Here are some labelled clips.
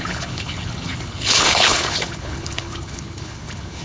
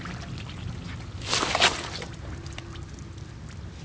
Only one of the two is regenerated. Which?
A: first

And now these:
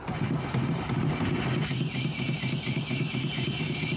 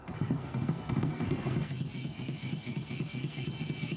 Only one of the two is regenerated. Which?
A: second